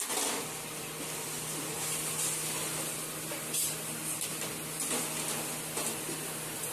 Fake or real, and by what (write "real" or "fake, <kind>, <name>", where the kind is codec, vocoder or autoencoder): real